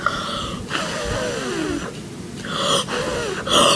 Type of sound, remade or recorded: recorded